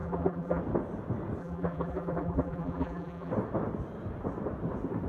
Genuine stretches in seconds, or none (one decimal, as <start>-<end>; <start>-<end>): 0.6-1.4; 3.3-5.1